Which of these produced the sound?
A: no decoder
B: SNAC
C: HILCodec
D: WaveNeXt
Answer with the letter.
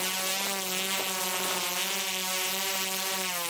A